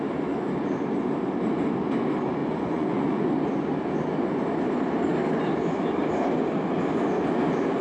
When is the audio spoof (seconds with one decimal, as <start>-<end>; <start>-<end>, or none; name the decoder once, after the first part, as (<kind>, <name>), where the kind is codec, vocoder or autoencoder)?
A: 2.4-3.3 (vocoder, Vocos)